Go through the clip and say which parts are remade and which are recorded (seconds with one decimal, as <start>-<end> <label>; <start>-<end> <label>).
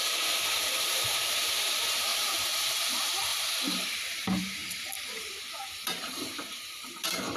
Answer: 0.0-3.3 remade; 3.3-4.0 recorded; 4.0-7.4 remade